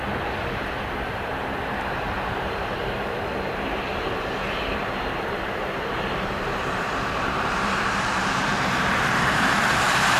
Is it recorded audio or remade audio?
remade